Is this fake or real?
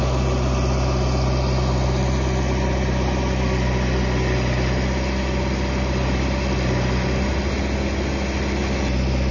real